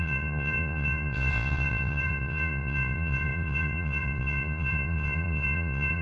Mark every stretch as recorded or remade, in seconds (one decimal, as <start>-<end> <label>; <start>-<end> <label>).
0.0-6.0 remade